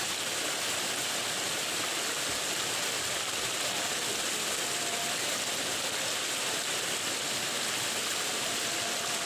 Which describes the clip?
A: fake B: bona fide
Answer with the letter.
B